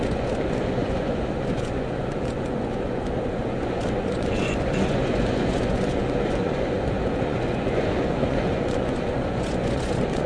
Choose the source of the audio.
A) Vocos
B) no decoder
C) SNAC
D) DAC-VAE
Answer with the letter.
A